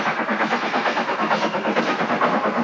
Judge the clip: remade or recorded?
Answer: remade